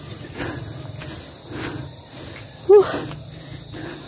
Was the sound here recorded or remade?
recorded